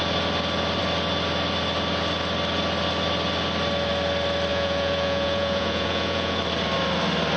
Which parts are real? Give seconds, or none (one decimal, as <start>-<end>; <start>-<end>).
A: 0.0-4.5; 6.4-7.4